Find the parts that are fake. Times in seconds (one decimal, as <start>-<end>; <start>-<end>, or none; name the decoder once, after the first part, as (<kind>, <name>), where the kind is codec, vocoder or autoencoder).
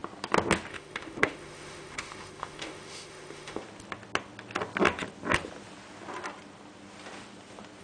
0.7-3.6 (autoencoder, DAC-VAE)